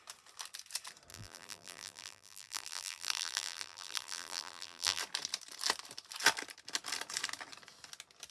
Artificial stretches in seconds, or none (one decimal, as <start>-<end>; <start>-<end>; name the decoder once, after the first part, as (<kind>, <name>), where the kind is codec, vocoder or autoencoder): 1.1-5.0 (vocoder, BigVGAN v2)